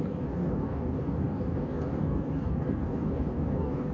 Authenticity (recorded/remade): remade